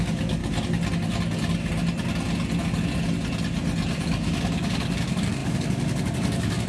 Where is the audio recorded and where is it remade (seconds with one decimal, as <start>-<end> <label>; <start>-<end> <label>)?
0.0-0.4 remade; 0.4-4.0 recorded; 4.0-6.7 remade